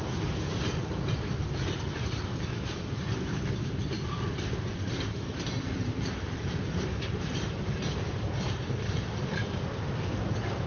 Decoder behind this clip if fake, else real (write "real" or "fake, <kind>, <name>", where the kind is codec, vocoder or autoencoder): fake, vocoder, BigVGAN v2